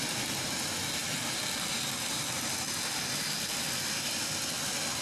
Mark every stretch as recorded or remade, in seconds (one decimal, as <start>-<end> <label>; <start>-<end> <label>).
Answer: 0.0-5.0 recorded